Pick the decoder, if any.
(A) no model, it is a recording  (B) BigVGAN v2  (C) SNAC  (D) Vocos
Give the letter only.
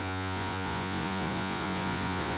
D